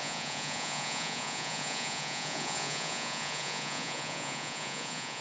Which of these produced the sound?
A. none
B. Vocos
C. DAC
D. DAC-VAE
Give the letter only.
B